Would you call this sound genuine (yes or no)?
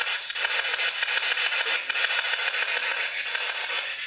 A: yes